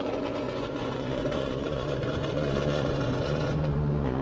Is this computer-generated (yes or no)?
yes